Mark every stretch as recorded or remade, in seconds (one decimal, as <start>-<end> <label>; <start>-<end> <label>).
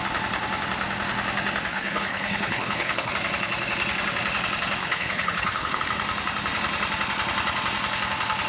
0.0-1.7 recorded; 1.7-3.1 remade; 3.1-4.8 recorded; 4.8-5.8 remade; 5.8-8.5 recorded